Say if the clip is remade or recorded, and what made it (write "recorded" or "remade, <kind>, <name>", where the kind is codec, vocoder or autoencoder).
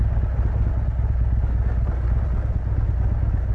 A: recorded